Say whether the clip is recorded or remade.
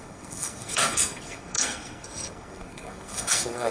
remade